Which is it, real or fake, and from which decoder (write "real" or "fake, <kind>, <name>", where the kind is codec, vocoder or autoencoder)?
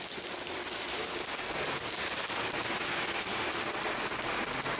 real